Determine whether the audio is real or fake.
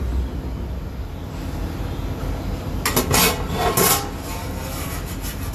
real